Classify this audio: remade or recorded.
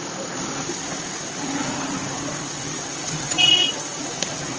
remade